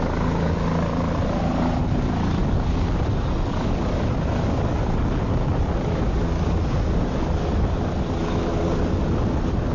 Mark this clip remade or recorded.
recorded